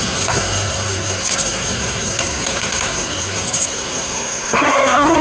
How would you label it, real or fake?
fake